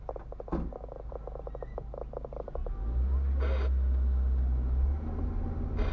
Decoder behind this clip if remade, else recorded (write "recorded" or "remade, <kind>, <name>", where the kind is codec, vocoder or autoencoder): recorded